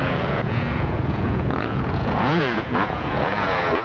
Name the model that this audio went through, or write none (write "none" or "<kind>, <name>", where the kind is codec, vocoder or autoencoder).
vocoder, Vocos